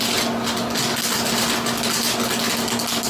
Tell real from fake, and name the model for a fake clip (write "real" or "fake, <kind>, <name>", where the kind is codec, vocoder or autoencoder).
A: real